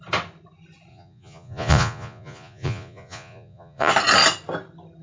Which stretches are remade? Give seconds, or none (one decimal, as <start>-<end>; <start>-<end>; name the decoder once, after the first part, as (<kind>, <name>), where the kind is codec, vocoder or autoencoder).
0.9-3.9 (vocoder, Vocos)